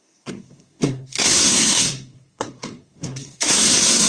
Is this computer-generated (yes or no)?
yes